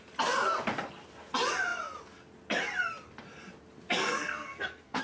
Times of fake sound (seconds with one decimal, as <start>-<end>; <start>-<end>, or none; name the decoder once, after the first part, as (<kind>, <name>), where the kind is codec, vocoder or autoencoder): 4.0-5.0 (codec, SNAC)